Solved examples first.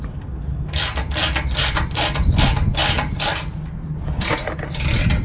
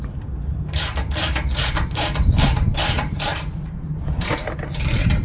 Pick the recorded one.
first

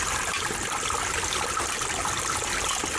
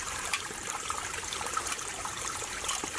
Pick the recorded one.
first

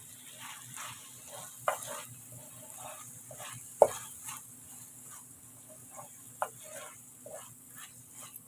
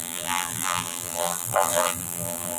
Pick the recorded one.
first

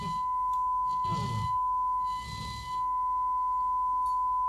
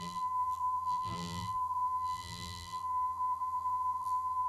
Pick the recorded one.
first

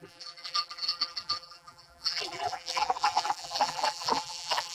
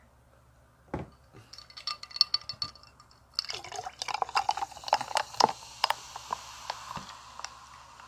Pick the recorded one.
second